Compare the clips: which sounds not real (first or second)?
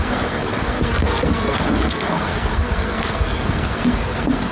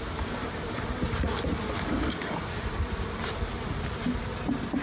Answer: first